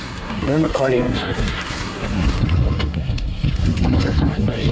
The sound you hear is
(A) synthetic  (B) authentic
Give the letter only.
A